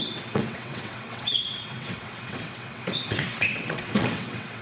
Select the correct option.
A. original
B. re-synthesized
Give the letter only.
B